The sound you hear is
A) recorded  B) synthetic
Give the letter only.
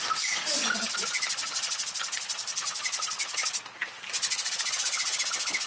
A